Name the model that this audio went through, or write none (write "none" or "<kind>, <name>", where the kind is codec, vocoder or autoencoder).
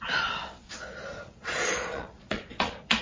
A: vocoder, Vocos